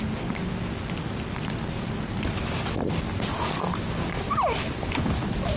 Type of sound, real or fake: real